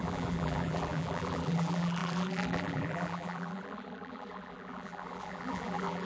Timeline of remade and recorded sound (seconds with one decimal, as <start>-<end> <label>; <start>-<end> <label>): 0.0-6.0 remade